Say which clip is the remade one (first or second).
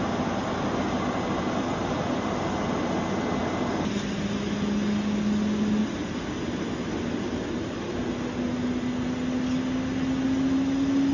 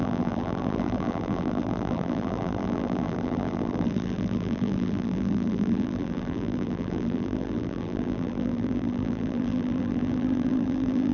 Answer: second